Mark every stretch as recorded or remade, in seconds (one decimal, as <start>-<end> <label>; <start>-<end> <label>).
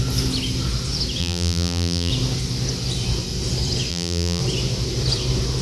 0.0-1.2 recorded; 1.2-2.1 remade; 2.1-3.9 recorded; 3.9-4.4 remade; 4.4-5.6 recorded